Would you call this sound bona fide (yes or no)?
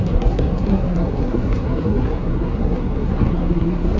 no